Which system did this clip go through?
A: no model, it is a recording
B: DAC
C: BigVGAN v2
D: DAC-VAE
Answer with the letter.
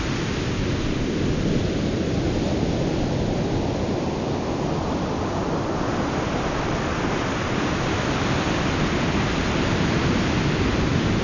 A